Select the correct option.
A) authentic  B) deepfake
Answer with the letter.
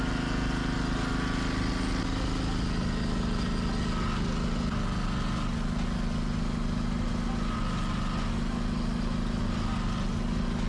A